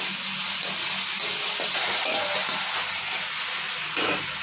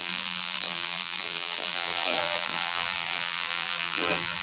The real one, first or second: first